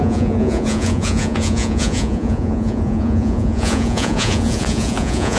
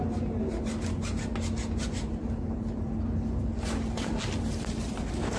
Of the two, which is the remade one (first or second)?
first